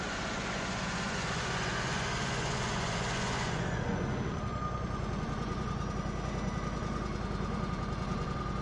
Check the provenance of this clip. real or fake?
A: fake